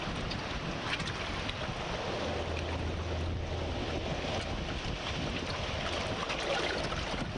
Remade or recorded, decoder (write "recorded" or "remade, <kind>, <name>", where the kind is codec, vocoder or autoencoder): recorded